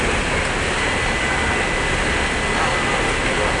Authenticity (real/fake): real